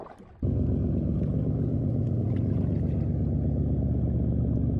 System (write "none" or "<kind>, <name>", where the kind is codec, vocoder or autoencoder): none